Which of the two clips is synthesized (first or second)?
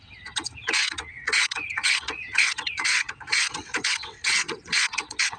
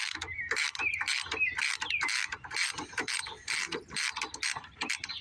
first